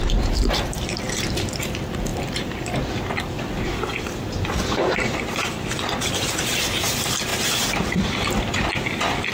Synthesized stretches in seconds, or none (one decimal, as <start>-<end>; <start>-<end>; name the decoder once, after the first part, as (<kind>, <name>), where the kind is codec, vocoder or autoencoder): 0.0-9.3 (vocoder, BigVGAN v2)

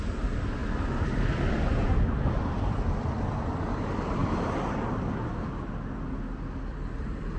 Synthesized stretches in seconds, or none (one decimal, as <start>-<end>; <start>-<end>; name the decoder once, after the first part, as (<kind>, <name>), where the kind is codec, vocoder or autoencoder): none

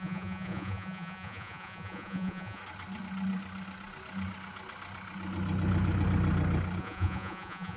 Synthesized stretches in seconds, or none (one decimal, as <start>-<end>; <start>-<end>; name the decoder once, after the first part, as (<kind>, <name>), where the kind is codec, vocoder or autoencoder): 0.0-2.6 (vocoder, Vocos); 6.8-7.8